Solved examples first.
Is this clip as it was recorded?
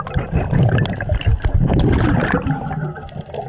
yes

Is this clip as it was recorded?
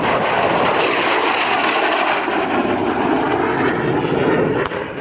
yes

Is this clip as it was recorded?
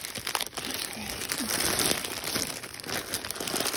yes